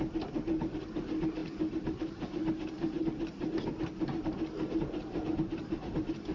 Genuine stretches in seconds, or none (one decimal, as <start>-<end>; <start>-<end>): 0.0-6.3